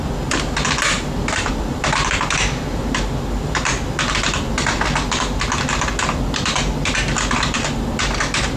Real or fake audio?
real